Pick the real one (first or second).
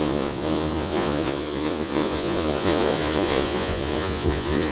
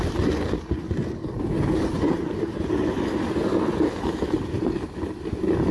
second